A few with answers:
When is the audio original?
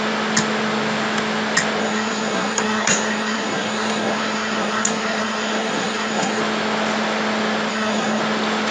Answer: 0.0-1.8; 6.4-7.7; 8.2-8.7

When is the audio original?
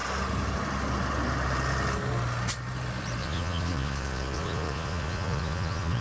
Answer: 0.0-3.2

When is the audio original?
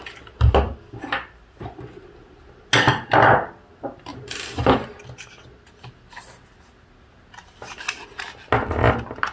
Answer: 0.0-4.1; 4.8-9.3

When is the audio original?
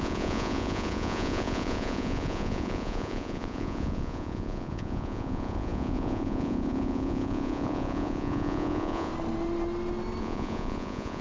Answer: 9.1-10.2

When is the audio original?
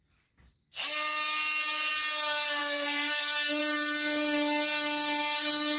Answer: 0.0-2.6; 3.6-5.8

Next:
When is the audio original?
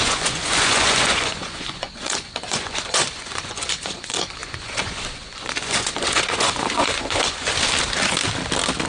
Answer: 7.5-8.9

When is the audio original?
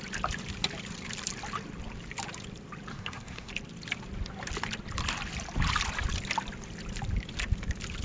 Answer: 0.0-2.9; 3.5-8.0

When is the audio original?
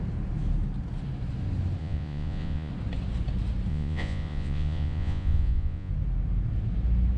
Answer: 0.0-1.8; 2.7-3.7; 5.9-7.2